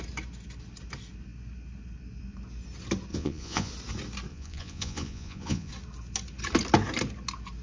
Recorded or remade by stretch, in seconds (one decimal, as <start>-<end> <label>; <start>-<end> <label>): 0.0-3.1 recorded; 3.1-3.7 remade; 3.7-4.3 recorded; 4.3-5.7 remade; 5.7-7.6 recorded